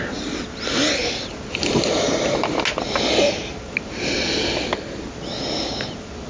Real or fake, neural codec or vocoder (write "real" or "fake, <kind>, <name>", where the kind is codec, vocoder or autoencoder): real